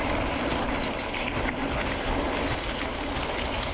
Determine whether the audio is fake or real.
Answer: real